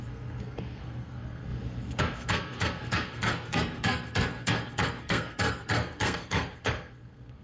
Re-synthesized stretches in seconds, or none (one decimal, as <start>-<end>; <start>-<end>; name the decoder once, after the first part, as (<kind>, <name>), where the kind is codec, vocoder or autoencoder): 0.0-7.4 (codec, SNAC)